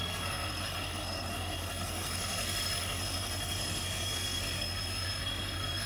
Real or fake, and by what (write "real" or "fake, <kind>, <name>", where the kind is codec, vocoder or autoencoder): fake, codec, SNAC